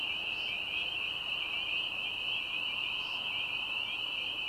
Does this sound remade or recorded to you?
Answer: recorded